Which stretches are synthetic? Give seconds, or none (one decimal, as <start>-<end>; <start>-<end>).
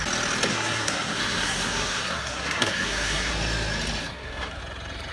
0.5-3.3; 4.0-4.6